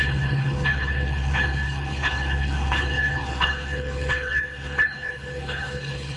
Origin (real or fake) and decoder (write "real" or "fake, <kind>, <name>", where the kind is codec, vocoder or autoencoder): fake, codec, HILCodec